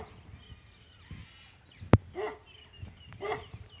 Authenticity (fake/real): real